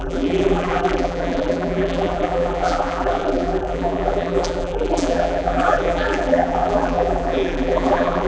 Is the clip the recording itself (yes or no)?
no